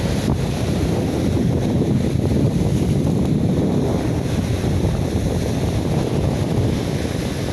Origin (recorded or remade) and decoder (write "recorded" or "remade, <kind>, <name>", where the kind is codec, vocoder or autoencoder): recorded